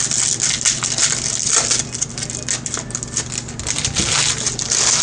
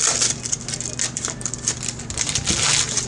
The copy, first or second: second